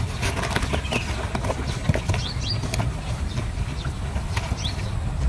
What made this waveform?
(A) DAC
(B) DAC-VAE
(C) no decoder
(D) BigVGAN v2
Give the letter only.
C